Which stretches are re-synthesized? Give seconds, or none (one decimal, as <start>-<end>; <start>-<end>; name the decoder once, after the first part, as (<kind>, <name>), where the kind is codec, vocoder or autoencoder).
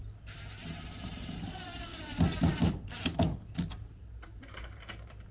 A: 1.9-5.3 (vocoder, BigVGAN v2)